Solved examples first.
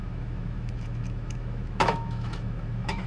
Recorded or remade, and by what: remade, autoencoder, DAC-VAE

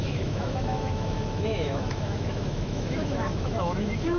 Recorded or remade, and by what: remade, autoencoder, DAC-VAE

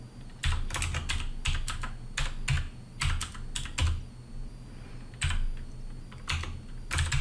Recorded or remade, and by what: recorded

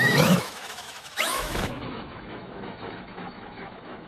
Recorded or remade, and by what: remade, autoencoder, DAC-VAE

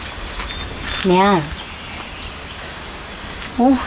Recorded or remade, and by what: recorded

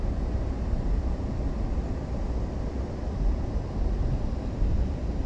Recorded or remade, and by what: recorded